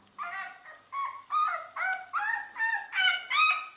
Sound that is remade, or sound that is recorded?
recorded